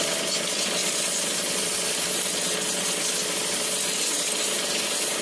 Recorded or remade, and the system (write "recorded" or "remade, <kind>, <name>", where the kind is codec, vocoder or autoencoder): recorded